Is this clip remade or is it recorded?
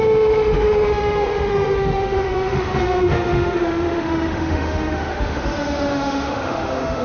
remade